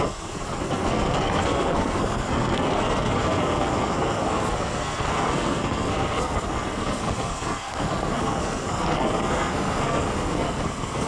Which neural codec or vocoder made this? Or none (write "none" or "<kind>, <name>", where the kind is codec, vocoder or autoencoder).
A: codec, SNAC